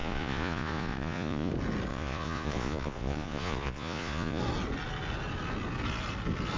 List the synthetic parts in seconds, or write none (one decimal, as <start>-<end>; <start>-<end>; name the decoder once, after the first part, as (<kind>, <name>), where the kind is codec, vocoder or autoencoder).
0.0-1.5 (vocoder, Vocos); 1.9-4.4